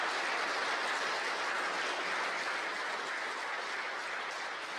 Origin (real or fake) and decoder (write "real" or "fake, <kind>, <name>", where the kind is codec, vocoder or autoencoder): real